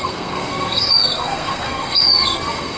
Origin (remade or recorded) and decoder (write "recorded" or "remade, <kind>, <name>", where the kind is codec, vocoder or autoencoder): remade, codec, SNAC